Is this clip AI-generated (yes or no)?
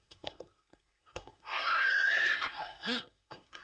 yes